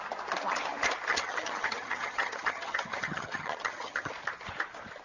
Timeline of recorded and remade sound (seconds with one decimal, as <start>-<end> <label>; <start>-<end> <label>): 0.0-1.1 recorded; 1.1-4.1 remade; 4.1-5.0 recorded

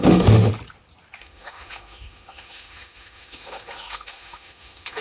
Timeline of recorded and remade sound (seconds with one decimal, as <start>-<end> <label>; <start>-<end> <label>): 0.0-0.5 remade; 0.5-1.2 recorded; 1.2-5.0 remade

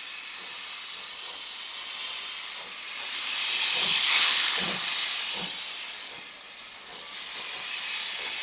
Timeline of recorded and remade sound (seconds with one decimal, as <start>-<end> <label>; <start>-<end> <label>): 0.0-3.8 recorded; 3.8-4.6 remade; 4.6-8.4 recorded

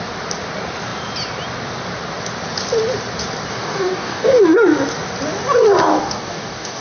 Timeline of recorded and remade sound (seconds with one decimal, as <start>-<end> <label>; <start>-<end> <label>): 0.0-3.5 recorded; 3.5-4.4 remade; 4.4-5.9 recorded; 5.9-6.8 remade

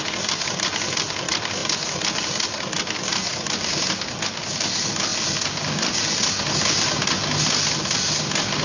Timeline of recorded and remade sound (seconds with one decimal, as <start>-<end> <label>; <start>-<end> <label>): 0.0-8.6 recorded

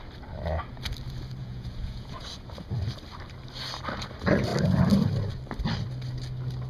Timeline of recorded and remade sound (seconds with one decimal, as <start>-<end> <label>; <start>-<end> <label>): 0.0-1.4 recorded; 1.4-2.3 remade; 2.3-6.7 recorded

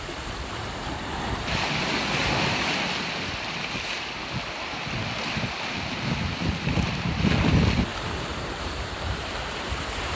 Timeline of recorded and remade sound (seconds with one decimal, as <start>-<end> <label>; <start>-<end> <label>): 0.0-7.9 recorded; 7.9-9.3 remade; 9.3-10.2 recorded

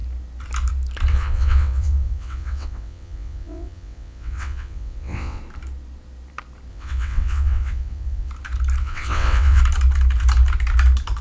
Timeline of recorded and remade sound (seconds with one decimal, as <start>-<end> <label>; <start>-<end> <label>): 0.0-1.1 recorded; 1.1-5.4 remade; 5.4-6.7 recorded; 6.7-8.3 remade; 8.3-8.8 recorded; 8.8-9.6 remade; 9.6-11.2 recorded